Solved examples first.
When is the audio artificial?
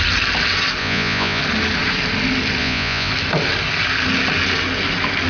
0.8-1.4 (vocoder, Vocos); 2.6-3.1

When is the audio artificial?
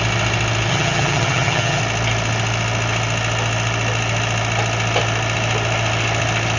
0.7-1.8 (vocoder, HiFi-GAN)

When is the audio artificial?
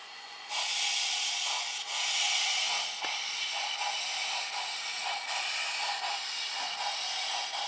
0.0-0.6 (vocoder, Vocos)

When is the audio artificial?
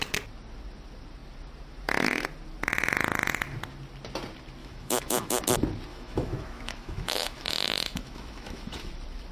4.6-5.4 (autoencoder, DAC-VAE); 5.9-8.9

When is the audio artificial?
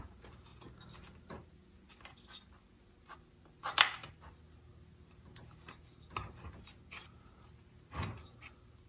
none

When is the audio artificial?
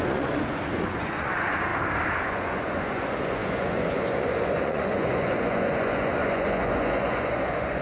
0.0-1.7 (vocoder, Vocos); 2.2-7.8